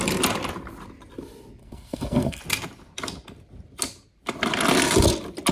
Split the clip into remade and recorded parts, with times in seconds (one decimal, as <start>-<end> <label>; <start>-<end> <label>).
0.0-1.6 recorded; 1.6-2.4 remade; 2.4-5.5 recorded